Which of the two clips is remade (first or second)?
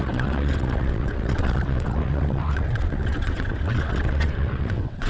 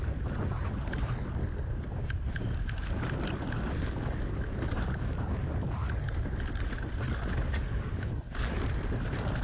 first